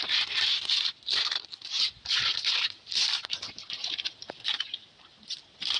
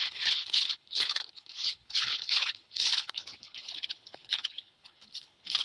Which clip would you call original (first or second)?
first